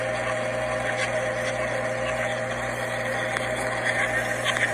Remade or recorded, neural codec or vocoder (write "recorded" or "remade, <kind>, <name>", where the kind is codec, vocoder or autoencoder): recorded